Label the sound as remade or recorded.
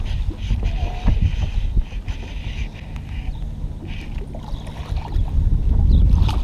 recorded